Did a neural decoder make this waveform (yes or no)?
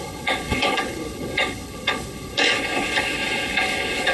yes